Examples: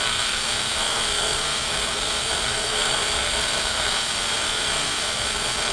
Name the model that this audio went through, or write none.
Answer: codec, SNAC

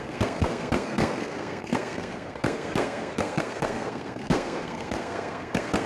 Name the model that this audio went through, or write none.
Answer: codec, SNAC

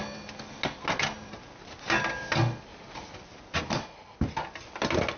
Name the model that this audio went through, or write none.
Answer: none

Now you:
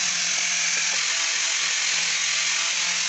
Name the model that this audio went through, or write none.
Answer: none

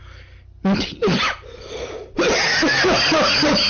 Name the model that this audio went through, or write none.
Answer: none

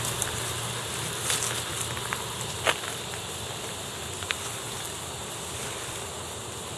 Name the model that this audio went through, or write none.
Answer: none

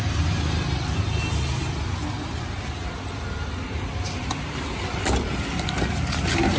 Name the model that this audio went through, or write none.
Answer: none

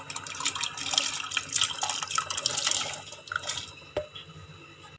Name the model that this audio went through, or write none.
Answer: none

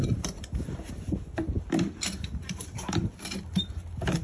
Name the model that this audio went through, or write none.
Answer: none